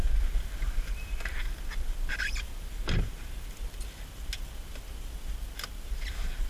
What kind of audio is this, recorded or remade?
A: recorded